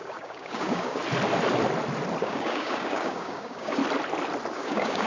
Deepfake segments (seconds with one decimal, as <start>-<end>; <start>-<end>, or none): 0.0-1.0; 2.2-3.8; 4.5-5.1